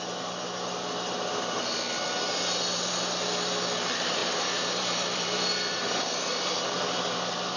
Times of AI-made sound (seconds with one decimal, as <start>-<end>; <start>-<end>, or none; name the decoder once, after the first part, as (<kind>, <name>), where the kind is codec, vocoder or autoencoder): 4.2-5.9 (vocoder, BigVGAN v2)